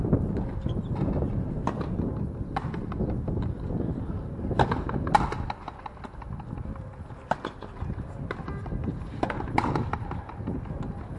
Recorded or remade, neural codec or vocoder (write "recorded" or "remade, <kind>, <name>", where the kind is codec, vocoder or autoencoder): recorded